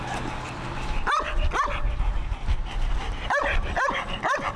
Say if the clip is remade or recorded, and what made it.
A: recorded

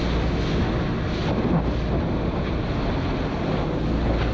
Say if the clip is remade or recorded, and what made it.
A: recorded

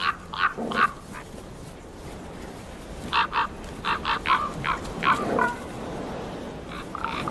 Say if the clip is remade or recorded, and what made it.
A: remade, vocoder, BigVGAN v2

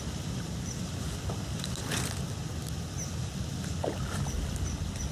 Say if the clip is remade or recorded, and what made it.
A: remade, vocoder, BigVGAN v2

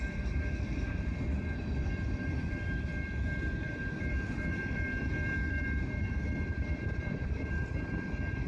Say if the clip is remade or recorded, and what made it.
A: remade, vocoder, BigVGAN v2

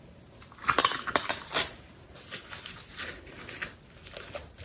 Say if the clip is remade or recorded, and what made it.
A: recorded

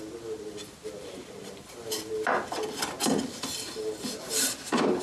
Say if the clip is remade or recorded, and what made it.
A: recorded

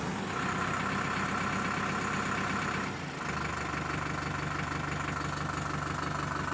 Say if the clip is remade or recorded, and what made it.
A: recorded